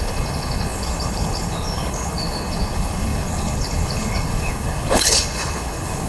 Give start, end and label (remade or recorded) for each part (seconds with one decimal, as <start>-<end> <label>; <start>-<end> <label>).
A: 0.0-6.1 remade